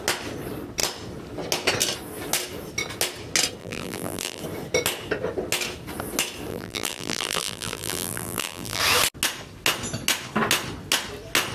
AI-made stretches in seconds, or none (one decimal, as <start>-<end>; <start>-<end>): 3.6-4.4; 6.5-8.8